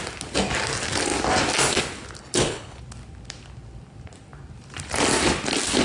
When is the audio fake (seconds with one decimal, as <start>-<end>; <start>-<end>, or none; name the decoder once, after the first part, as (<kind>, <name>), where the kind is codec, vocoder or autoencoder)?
2.2-2.8 (codec, HILCodec)